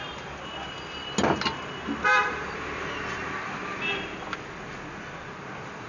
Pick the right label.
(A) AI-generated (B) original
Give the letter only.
B